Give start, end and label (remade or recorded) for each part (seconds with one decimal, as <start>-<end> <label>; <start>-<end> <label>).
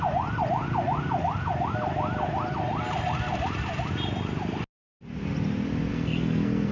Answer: 0.0-5.9 recorded; 5.9-6.7 remade